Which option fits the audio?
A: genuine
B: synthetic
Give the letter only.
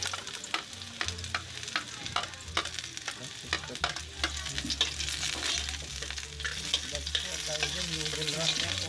A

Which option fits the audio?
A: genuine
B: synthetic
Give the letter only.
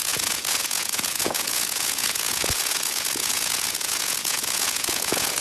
B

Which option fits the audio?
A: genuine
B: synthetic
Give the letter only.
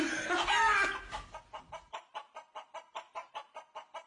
A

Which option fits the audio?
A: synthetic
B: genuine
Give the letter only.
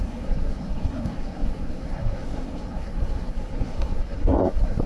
A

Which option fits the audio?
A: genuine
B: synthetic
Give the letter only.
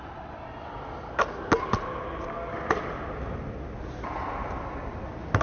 A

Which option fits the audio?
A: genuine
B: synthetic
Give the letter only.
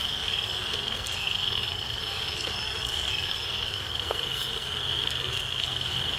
B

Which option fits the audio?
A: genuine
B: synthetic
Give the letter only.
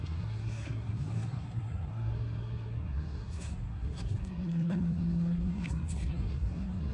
B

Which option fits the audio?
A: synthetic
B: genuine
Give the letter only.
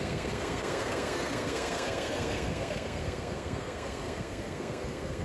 A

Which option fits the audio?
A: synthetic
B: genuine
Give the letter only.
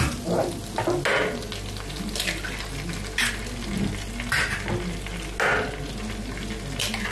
B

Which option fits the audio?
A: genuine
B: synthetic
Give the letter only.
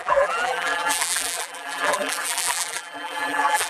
B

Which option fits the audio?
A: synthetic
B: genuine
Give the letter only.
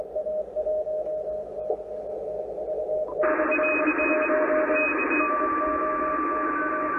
B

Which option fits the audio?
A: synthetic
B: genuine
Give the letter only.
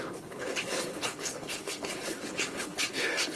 A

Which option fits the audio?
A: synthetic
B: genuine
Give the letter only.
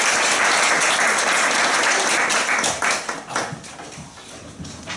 B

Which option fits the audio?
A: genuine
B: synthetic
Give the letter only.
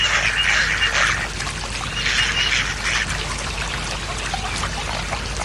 A